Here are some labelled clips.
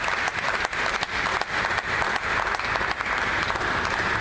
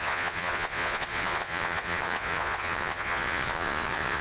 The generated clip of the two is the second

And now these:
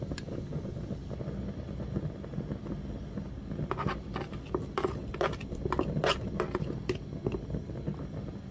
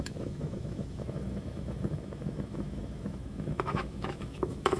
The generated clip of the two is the second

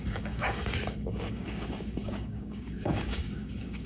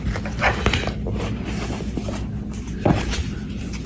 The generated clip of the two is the first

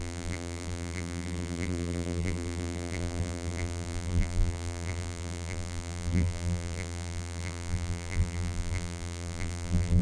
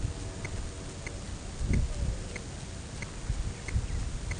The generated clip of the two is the first